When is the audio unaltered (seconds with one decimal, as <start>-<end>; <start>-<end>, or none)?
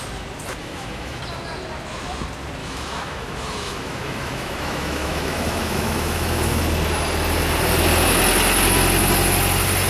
0.0-0.6; 1.2-2.6; 6.6-9.9